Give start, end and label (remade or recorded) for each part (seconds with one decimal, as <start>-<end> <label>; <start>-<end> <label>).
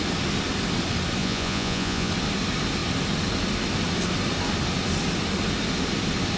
0.0-1.2 recorded; 1.2-2.1 remade; 2.1-6.4 recorded